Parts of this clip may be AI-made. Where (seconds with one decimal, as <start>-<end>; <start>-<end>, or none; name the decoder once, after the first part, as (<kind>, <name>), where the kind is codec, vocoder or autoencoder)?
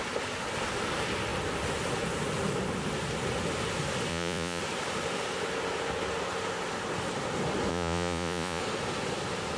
4.1-4.6 (vocoder, Vocos); 7.7-8.6